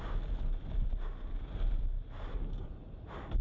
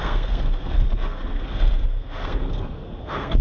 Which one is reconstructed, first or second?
second